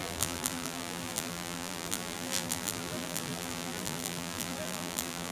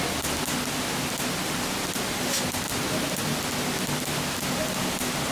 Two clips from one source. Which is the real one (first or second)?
second